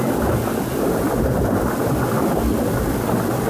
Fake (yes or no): no